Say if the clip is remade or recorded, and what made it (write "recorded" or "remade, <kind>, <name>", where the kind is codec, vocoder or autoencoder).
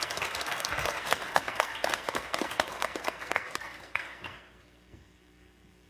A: remade, codec, SNAC